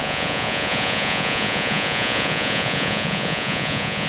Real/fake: fake